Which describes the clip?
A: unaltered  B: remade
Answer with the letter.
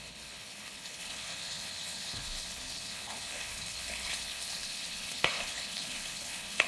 B